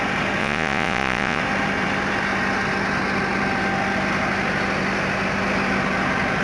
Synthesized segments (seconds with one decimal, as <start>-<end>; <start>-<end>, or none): 0.4-1.4

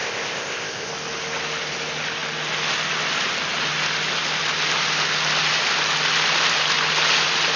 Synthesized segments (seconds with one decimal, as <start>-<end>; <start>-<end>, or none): 0.0-0.9

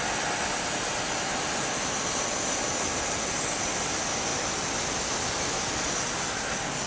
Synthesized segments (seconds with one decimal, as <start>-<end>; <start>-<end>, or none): none